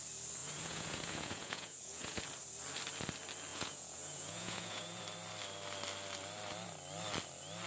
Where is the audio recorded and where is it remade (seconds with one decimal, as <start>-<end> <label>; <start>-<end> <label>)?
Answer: 0.0-0.4 recorded; 0.4-2.2 remade; 2.2-3.5 recorded; 3.5-5.0 remade; 5.0-7.7 recorded